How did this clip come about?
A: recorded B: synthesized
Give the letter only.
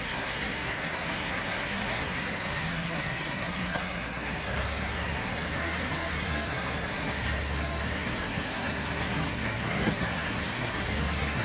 B